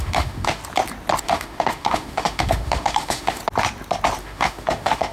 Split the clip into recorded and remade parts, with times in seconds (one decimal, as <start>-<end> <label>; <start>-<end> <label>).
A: 0.0-0.6 remade; 0.6-1.2 recorded; 1.2-3.4 remade; 3.4-4.2 recorded; 4.2-5.1 remade